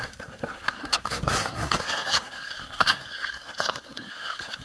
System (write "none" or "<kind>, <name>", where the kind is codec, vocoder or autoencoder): codec, SNAC